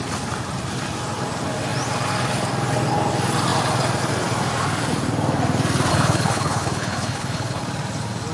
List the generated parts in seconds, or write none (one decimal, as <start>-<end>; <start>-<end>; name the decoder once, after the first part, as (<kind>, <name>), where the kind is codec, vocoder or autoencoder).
5.9-7.6 (codec, HILCodec)